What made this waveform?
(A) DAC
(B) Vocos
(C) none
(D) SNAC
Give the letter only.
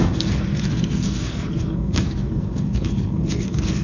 D